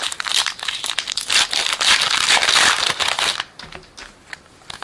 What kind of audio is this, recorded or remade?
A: recorded